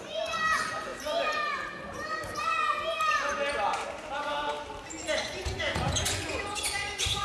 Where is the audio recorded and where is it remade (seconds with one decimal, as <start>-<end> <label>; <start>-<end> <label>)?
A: 0.0-0.9 remade; 0.9-5.2 recorded; 5.2-7.2 remade